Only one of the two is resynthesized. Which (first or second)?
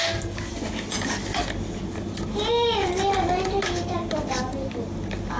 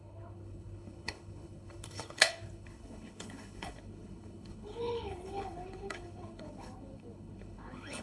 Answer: second